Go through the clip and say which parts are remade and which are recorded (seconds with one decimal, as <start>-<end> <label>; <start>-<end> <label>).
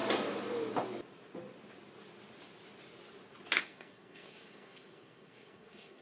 0.0-3.6 recorded; 3.6-6.0 remade